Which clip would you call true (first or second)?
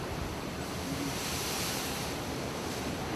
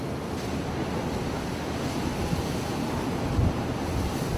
second